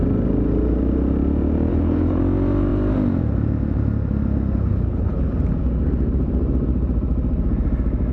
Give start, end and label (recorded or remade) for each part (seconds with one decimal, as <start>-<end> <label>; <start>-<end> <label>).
0.0-1.7 recorded; 1.7-2.2 remade; 2.2-4.7 recorded; 4.7-5.3 remade; 5.3-8.1 recorded